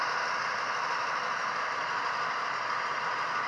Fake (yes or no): yes